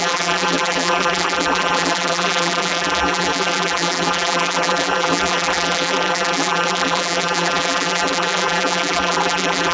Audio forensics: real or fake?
fake